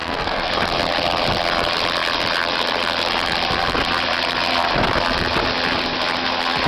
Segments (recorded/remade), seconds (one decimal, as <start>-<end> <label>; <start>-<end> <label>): 0.0-0.5 remade; 0.5-6.7 recorded